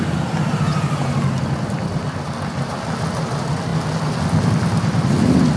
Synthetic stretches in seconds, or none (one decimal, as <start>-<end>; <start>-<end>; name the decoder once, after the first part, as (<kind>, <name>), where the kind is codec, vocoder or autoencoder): none